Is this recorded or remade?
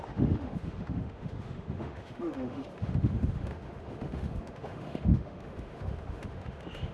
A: remade